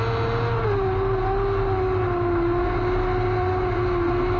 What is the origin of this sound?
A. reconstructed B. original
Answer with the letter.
B